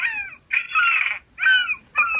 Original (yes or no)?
yes